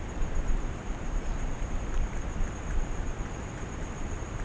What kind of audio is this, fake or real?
fake